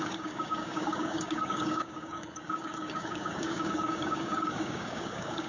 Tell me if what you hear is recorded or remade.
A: remade